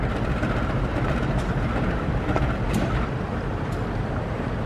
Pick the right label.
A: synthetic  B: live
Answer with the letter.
A